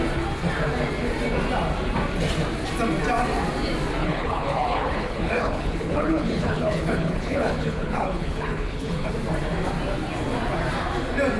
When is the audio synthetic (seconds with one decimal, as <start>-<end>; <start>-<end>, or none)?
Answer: 4.0-9.1